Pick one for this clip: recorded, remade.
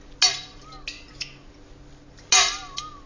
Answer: recorded